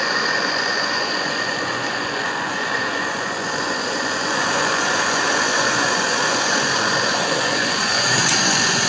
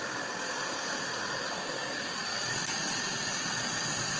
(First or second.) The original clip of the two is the second